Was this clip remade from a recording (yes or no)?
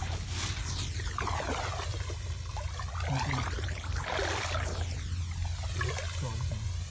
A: no